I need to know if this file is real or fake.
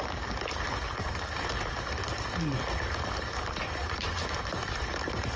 fake